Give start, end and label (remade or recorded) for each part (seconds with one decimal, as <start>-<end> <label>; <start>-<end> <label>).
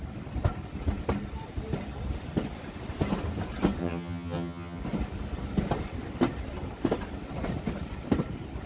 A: 0.0-3.8 recorded; 3.8-4.8 remade; 4.8-8.7 recorded